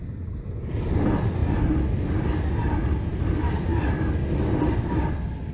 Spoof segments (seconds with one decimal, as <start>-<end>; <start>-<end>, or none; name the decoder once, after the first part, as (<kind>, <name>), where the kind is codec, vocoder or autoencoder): none